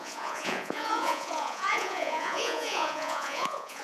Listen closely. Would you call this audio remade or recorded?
remade